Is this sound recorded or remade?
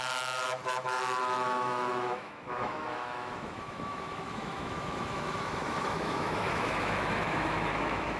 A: remade